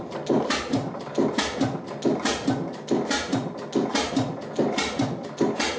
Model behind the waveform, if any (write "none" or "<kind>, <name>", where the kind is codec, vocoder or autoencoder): none